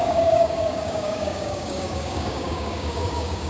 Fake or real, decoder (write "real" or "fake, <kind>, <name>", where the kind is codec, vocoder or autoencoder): fake, codec, DAC